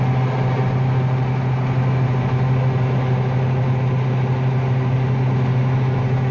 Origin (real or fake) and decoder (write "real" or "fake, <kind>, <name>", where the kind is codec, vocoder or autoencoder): real